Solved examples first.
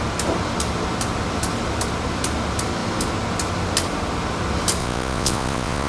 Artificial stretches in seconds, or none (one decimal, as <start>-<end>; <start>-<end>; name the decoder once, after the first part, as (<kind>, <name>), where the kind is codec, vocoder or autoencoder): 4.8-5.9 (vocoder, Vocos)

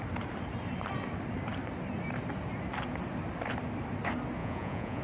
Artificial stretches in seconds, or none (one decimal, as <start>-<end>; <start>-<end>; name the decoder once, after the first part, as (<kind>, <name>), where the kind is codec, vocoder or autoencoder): 4.4-5.0 (vocoder, Vocos)

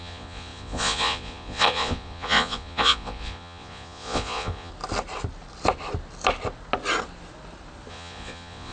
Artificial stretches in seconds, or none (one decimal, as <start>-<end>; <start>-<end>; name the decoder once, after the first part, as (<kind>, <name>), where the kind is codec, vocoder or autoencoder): 0.0-4.7 (vocoder, Vocos); 7.9-8.7